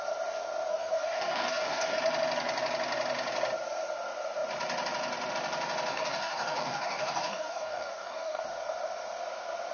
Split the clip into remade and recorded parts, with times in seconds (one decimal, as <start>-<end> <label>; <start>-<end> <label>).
0.0-0.7 recorded; 0.7-2.0 remade; 2.0-5.9 recorded; 5.9-8.4 remade; 8.4-9.7 recorded